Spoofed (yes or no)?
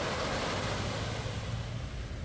no